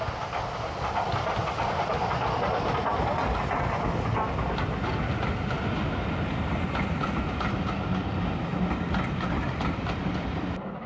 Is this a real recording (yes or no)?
yes